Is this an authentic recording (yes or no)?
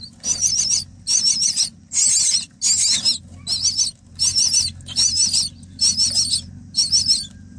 yes